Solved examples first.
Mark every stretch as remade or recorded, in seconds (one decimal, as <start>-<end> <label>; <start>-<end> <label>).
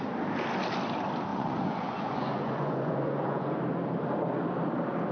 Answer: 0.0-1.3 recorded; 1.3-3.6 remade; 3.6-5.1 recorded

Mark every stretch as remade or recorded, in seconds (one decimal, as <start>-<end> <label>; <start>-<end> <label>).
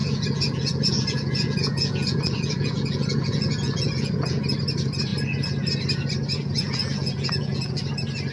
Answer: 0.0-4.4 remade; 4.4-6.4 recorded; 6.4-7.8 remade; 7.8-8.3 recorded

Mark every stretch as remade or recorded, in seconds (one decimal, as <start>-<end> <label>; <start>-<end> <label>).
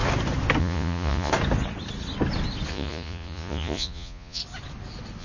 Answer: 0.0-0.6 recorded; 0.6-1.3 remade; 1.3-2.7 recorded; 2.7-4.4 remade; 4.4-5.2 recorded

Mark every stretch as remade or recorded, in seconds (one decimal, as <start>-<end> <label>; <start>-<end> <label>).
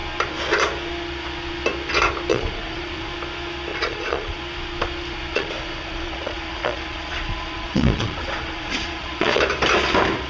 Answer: 0.0-2.3 recorded; 2.3-3.1 remade; 3.1-3.7 recorded; 3.7-4.4 remade; 4.4-5.3 recorded; 5.3-9.4 remade; 9.4-10.3 recorded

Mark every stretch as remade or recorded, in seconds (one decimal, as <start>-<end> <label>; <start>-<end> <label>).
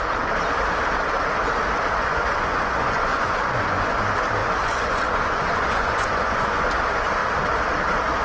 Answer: 0.0-2.0 recorded; 2.0-4.0 remade; 4.0-4.4 recorded; 4.4-6.7 remade; 6.7-8.2 recorded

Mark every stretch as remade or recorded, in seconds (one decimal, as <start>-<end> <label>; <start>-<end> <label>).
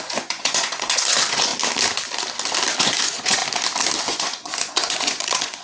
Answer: 0.0-1.5 remade; 1.5-2.8 recorded; 2.8-3.4 remade; 3.4-4.0 recorded; 4.0-5.6 remade